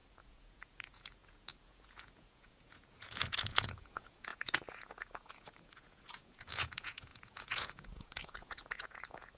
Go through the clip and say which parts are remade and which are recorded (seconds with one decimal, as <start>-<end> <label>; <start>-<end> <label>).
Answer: 0.0-9.4 remade